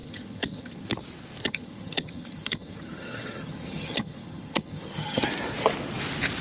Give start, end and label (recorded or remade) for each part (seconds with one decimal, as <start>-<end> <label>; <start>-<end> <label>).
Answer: 0.0-0.9 remade; 0.9-1.4 recorded; 1.4-5.2 remade; 5.2-6.4 recorded